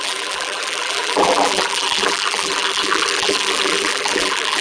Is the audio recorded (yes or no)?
no